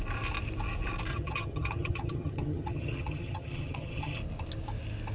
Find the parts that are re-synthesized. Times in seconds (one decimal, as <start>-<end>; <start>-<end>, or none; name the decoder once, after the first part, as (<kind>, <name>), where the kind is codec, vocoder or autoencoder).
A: 1.1-4.2 (vocoder, HiFi-GAN)